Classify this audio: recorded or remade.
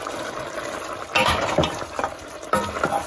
recorded